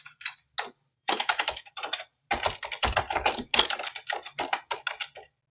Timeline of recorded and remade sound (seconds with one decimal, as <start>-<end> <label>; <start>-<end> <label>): 0.0-0.9 recorded; 0.9-1.7 remade; 1.7-5.5 recorded